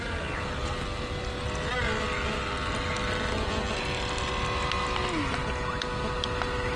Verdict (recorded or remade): recorded